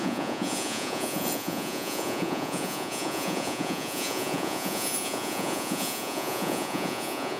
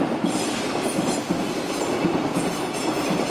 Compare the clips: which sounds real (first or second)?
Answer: second